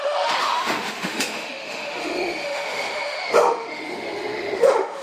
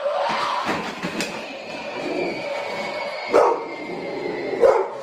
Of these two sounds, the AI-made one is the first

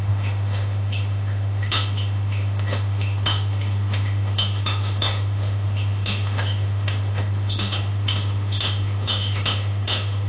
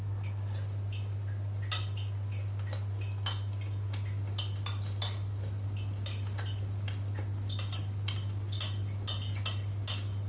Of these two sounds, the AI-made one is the first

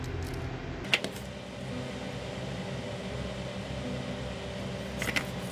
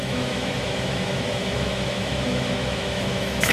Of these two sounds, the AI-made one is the second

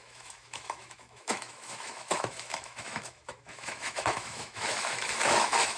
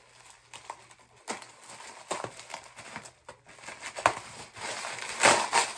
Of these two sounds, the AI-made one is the first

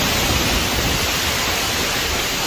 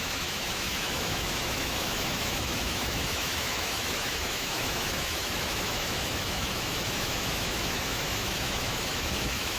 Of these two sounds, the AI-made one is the second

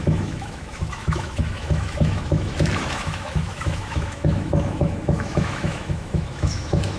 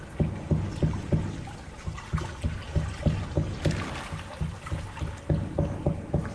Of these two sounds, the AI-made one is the first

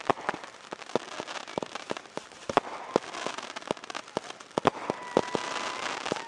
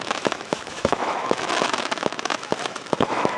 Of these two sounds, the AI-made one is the second